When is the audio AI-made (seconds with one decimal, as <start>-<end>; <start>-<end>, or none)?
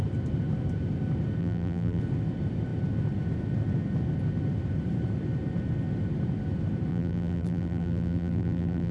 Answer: 1.4-2.0; 6.9-8.9